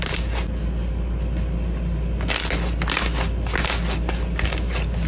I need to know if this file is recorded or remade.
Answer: recorded